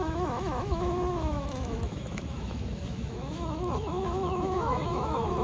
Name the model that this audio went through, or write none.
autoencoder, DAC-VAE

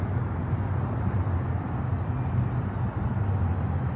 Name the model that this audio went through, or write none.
none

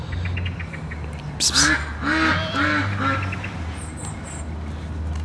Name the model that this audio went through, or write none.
none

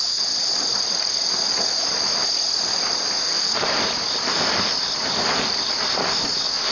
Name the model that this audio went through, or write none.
none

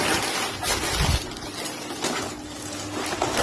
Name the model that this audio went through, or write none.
none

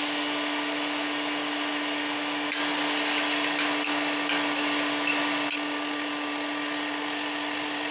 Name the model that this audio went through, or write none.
none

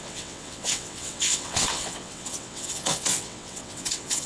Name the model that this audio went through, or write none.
vocoder, WaveNeXt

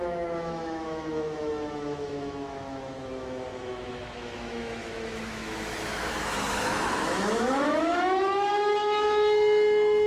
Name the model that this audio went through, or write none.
autoencoder, DAC-VAE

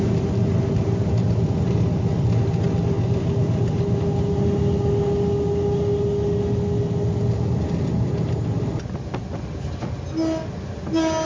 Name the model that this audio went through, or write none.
none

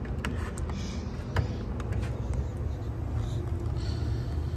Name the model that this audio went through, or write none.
none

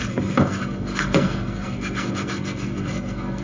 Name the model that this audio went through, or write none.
codec, SNAC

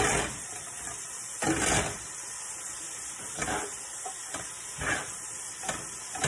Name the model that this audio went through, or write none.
none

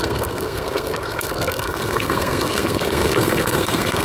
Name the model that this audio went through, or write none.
codec, SNAC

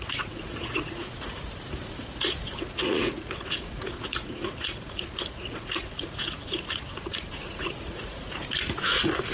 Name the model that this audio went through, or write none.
vocoder, Vocos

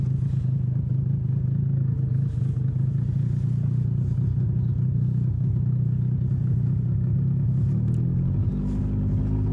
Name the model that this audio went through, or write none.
none